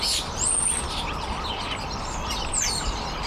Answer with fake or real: real